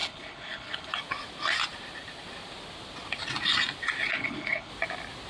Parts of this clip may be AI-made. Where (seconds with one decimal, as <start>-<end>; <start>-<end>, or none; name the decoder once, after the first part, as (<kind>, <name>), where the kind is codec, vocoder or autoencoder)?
0.0-0.9 (codec, HILCodec); 4.1-4.7